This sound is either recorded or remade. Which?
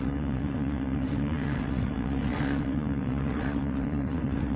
remade